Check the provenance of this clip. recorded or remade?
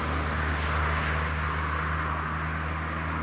recorded